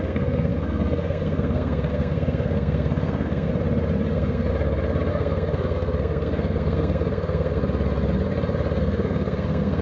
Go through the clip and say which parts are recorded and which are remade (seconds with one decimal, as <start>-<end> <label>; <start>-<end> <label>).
0.0-3.5 remade; 3.5-4.1 recorded; 4.1-4.5 remade; 4.5-5.1 recorded; 5.1-7.6 remade; 7.6-8.8 recorded; 8.8-9.8 remade